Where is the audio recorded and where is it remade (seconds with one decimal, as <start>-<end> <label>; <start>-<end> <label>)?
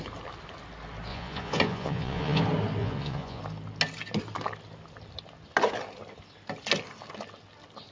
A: 0.0-1.1 recorded; 1.1-2.4 remade; 2.4-2.8 recorded; 2.8-3.4 remade; 3.4-7.9 recorded